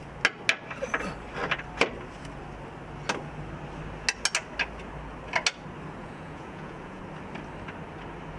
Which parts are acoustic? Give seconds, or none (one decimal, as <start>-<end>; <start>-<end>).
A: 0.0-6.0; 7.0-8.4